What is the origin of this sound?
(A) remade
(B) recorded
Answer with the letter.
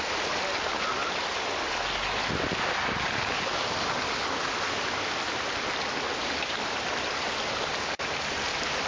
B